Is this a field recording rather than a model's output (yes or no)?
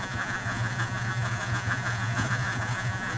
no